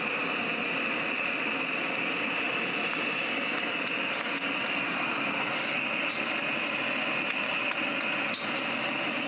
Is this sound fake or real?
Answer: real